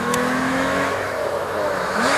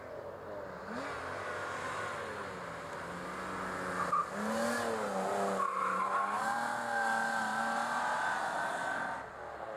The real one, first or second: second